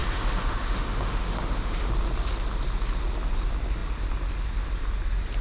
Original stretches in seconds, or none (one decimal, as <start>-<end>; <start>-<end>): 1.9-5.4